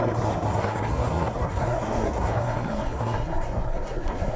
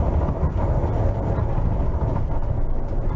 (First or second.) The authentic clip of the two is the second